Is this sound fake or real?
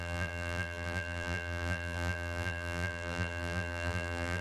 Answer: fake